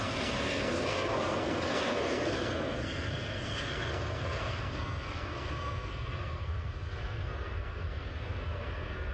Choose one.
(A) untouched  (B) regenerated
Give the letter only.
B